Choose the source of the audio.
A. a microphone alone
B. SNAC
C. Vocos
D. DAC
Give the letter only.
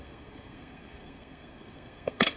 B